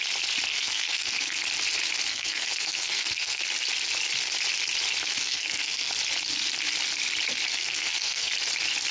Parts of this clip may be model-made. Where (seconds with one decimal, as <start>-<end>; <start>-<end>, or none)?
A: 0.5-1.4; 2.1-3.4; 5.2-5.9; 7.5-8.3